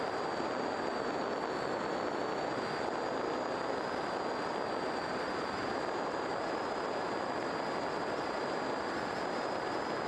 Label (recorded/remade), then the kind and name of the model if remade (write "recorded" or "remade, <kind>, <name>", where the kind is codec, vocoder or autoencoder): recorded